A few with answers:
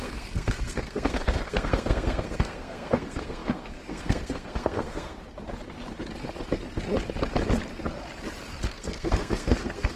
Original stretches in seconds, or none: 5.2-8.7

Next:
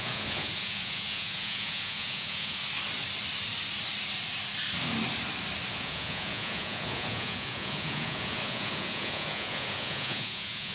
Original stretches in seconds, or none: 2.6-5.7